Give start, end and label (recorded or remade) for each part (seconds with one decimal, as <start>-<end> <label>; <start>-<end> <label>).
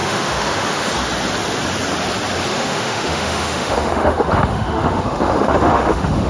0.0-0.9 remade; 0.9-2.5 recorded; 2.5-6.3 remade